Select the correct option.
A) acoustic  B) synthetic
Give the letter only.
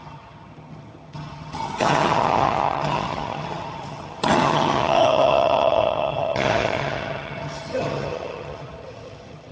B